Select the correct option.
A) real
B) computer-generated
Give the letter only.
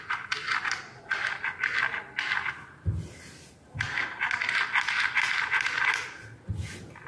A